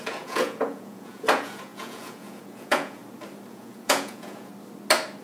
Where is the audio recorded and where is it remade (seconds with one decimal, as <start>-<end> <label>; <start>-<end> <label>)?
0.0-3.0 remade; 3.0-3.5 recorded; 3.5-4.5 remade; 4.5-5.2 recorded

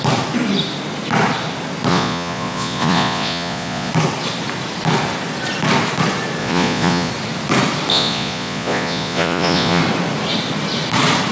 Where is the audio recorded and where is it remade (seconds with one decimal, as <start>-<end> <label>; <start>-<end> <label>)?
0.0-1.9 recorded; 1.9-3.9 remade; 3.9-6.4 recorded; 6.4-7.1 remade; 7.1-7.9 recorded; 7.9-9.8 remade; 9.8-11.3 recorded

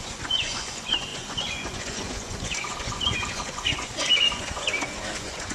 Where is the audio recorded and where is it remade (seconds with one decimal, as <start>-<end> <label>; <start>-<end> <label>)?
0.0-5.5 remade

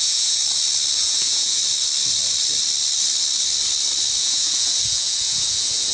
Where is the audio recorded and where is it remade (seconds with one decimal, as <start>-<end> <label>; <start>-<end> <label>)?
0.0-0.4 remade; 0.4-1.0 recorded; 1.0-1.6 remade; 1.6-4.2 recorded; 4.2-5.9 remade